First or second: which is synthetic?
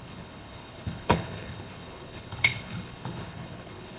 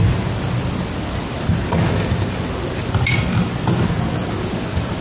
first